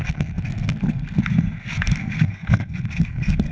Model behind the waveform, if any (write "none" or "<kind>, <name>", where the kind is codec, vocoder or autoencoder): codec, SNAC